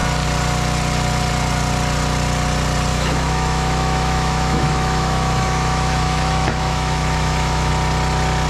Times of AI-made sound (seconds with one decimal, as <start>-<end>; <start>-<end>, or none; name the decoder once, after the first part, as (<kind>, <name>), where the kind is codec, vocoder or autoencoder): 2.9-7.7 (autoencoder, DAC-VAE)